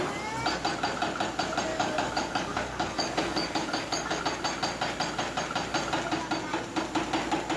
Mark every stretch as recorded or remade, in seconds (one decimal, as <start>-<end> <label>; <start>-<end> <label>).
0.0-1.7 recorded; 1.7-4.2 remade; 4.2-7.6 recorded